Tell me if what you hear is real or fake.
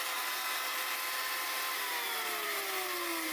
real